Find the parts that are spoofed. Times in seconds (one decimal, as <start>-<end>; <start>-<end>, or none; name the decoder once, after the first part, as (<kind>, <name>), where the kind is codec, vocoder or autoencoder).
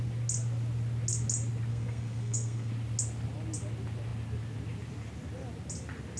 1.7-2.7 (codec, SNAC)